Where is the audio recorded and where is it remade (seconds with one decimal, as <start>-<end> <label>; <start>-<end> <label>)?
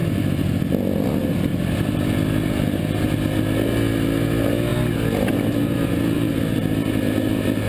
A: 0.0-1.1 remade; 1.1-1.5 recorded; 1.5-2.8 remade; 2.8-7.7 recorded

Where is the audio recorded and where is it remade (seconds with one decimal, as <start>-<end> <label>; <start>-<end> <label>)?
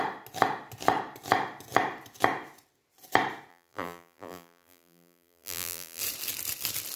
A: 0.0-3.5 recorded; 3.5-6.0 remade; 6.0-7.0 recorded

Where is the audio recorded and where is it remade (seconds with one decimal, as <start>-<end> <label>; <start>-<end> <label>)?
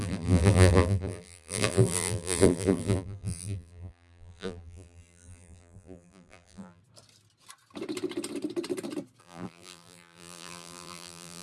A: 0.0-6.8 remade; 6.8-9.2 recorded; 9.2-11.4 remade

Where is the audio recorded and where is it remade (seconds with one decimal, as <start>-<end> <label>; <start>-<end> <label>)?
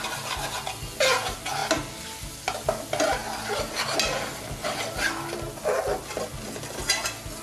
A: 0.0-7.4 recorded